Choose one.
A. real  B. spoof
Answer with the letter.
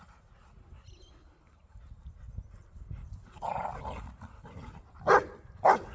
A